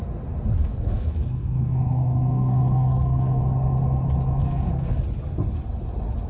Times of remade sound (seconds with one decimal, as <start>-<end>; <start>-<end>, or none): 0.6-3.4; 4.4-5.0

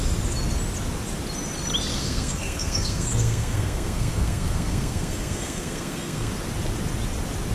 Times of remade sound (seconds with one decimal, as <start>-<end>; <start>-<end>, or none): 1.9-6.3

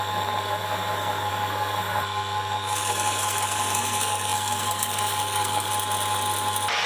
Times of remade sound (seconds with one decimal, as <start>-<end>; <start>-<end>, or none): 0.0-5.7